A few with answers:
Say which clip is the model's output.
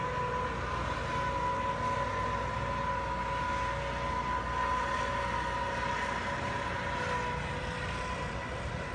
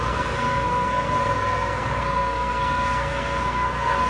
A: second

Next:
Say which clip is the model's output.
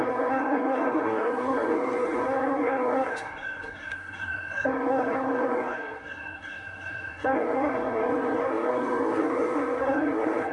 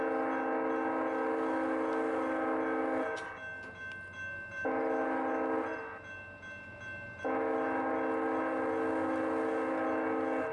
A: first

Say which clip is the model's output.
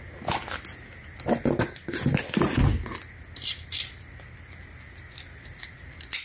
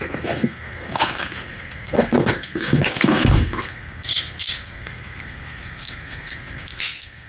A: second